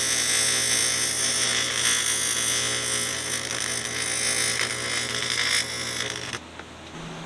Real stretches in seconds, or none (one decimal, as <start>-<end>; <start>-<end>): 0.0-7.3